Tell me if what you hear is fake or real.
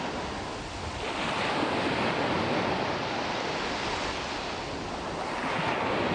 real